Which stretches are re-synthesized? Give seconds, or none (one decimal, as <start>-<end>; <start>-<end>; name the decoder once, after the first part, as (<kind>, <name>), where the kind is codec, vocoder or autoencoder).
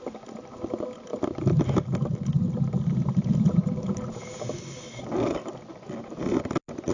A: none